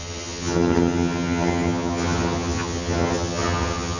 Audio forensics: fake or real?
fake